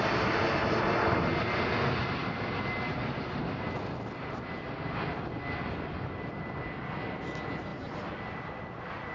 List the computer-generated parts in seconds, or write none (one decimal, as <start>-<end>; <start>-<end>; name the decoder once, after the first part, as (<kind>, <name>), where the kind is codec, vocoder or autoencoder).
none